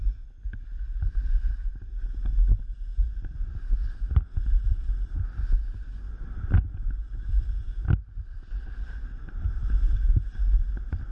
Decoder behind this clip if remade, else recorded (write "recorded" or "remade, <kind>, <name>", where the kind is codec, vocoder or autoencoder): recorded